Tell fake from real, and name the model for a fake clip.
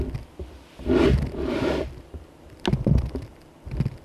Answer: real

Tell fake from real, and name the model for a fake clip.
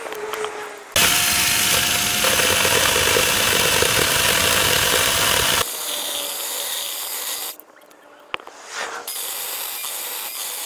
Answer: real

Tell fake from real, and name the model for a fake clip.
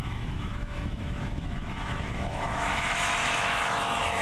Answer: fake, autoencoder, DAC-VAE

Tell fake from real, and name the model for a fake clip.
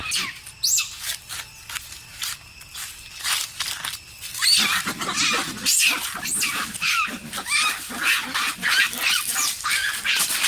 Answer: real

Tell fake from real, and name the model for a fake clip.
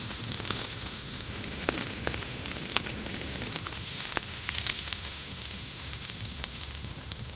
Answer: fake, autoencoder, DAC-VAE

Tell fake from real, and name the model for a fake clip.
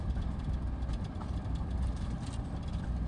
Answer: real